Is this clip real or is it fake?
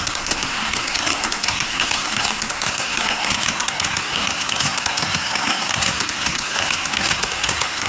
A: fake